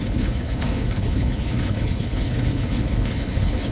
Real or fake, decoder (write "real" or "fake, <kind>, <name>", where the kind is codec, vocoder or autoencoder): fake, codec, HILCodec